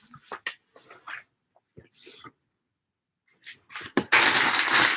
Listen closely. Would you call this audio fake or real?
real